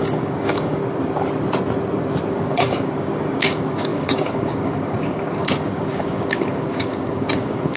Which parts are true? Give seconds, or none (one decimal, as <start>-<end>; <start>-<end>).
0.8-2.3